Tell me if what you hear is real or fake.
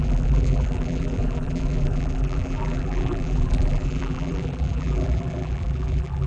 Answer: fake